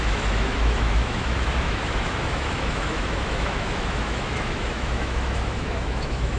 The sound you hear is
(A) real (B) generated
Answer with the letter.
B